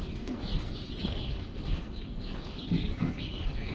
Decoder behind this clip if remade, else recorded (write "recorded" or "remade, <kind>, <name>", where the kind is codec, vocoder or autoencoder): remade, codec, SNAC